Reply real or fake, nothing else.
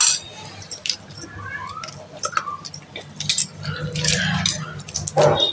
real